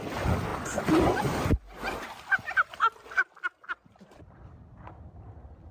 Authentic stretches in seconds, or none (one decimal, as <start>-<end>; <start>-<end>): 0.0-5.7